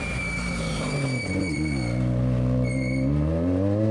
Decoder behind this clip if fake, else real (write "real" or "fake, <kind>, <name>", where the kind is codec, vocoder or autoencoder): real